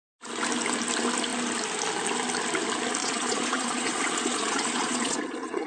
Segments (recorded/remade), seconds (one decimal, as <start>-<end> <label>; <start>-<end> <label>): 0.0-3.0 recorded; 3.0-5.7 remade